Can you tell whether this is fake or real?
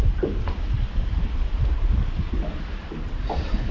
real